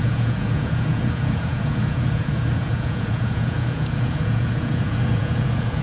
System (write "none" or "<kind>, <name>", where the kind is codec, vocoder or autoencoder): vocoder, Vocos